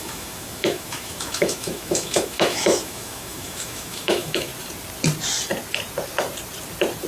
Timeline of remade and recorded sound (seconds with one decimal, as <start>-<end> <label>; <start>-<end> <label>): 0.0-4.5 remade; 4.5-7.1 recorded